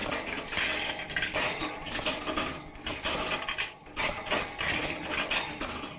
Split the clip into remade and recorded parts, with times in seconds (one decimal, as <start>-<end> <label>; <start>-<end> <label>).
0.0-6.0 recorded

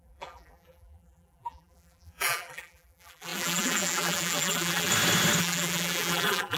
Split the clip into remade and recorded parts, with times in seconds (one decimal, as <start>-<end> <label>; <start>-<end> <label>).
0.0-4.9 remade; 4.9-5.4 recorded; 5.4-6.6 remade

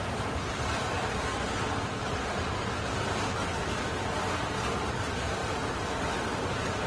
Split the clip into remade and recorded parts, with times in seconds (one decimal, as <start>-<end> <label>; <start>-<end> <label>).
0.0-6.9 recorded

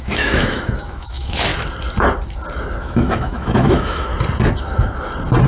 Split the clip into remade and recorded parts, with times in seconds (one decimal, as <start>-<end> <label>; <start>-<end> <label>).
0.0-1.5 remade; 1.5-2.8 recorded; 2.8-4.1 remade; 4.1-5.5 recorded

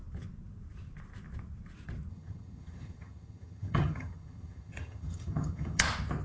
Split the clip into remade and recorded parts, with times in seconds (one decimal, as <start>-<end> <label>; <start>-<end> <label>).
0.0-2.1 recorded; 2.1-5.8 remade; 5.8-6.2 recorded